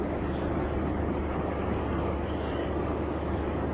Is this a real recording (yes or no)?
no